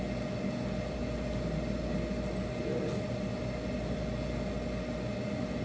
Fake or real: real